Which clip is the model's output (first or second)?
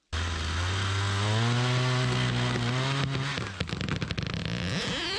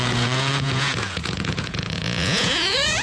second